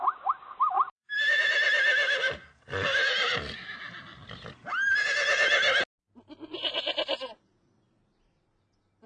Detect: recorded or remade recorded